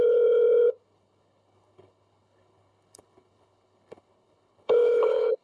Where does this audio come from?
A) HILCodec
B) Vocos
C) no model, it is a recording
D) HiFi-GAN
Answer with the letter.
A